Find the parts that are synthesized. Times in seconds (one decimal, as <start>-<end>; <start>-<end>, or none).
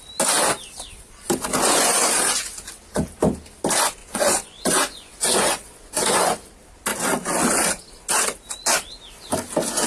1.5-2.1; 4.0-6.5